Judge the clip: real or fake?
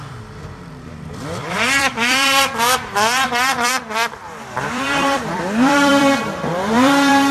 fake